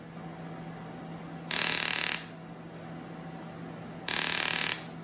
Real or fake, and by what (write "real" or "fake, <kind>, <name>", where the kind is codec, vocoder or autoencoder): real